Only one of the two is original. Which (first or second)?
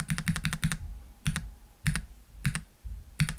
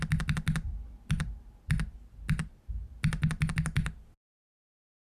second